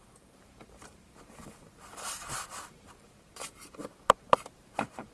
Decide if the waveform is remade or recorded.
remade